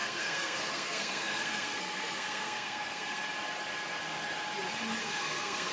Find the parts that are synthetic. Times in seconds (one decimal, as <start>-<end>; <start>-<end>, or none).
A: 0.0-3.2; 5.0-5.7